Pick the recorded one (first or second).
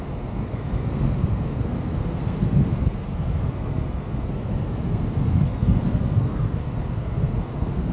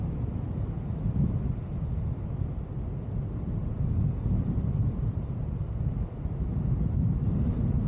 second